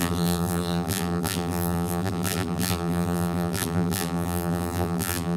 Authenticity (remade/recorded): remade